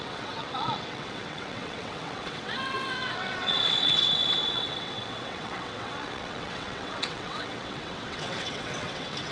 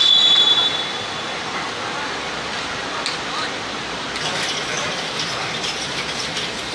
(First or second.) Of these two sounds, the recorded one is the second